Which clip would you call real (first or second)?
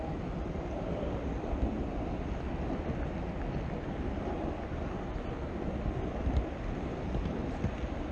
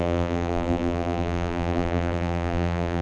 first